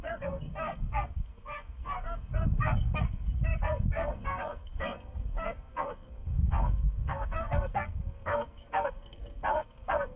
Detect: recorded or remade remade